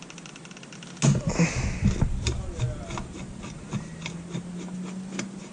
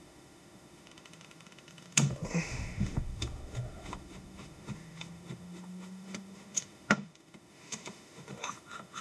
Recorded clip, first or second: first